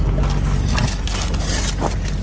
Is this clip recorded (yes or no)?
yes